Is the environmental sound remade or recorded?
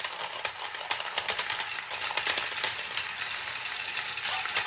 recorded